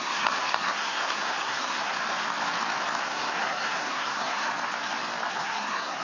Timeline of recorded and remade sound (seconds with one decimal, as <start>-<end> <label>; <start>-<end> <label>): 0.0-2.0 remade; 2.0-3.0 recorded; 3.0-4.5 remade; 4.5-5.3 recorded; 5.3-6.0 remade